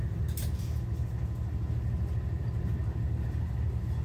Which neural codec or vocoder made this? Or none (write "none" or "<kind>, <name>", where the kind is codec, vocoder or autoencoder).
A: none